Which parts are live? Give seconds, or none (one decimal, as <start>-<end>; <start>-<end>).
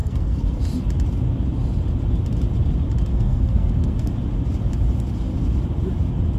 0.6-3.1; 4.1-6.4